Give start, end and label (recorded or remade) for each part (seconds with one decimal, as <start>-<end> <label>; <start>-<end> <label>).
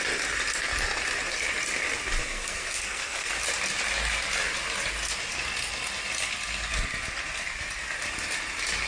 0.0-2.2 recorded; 2.2-3.3 remade; 3.3-8.9 recorded